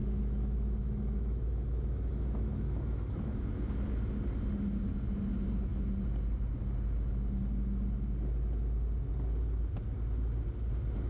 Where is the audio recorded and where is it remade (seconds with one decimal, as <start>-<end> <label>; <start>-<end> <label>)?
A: 0.0-3.7 remade; 3.7-11.1 recorded